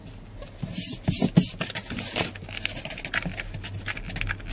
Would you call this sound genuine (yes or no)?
yes